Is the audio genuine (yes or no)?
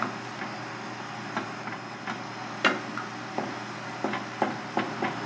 yes